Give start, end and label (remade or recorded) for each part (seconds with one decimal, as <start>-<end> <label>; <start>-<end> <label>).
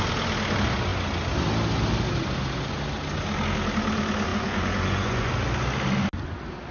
0.0-4.3 recorded; 4.3-5.3 remade; 5.3-6.7 recorded